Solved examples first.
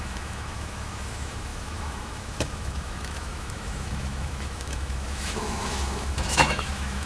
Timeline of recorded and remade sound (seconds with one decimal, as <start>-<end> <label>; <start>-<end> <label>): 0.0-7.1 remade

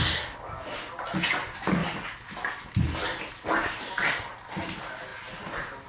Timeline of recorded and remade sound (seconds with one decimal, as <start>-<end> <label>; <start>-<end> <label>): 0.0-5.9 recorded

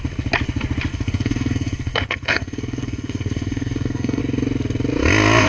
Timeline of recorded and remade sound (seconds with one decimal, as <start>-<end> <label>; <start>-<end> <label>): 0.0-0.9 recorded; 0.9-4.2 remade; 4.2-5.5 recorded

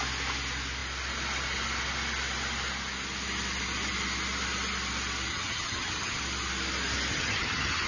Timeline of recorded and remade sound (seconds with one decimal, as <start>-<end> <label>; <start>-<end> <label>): 0.0-5.3 recorded; 5.3-6.2 remade; 6.2-7.1 recorded; 7.1-7.9 remade

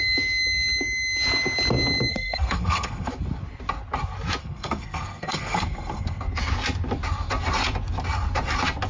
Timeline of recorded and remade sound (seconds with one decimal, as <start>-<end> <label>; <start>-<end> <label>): 0.0-2.1 recorded; 2.1-3.1 remade; 3.1-4.4 recorded; 4.4-6.2 remade; 6.2-8.9 recorded

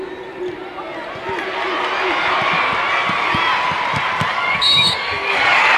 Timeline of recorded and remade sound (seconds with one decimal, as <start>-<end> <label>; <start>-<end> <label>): 0.0-4.3 recorded; 4.3-5.8 remade

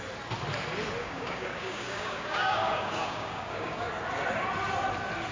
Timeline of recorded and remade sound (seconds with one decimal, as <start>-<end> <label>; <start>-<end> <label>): 0.0-1.0 recorded; 1.0-3.9 remade; 3.9-5.3 recorded